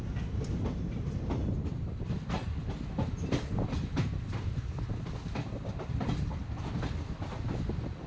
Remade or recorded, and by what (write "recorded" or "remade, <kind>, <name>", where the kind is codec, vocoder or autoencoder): recorded